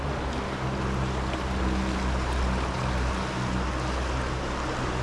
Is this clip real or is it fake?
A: real